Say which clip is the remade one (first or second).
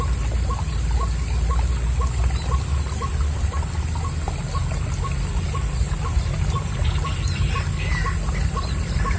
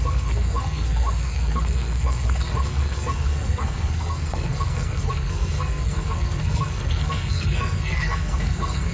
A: second